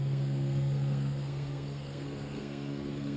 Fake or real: fake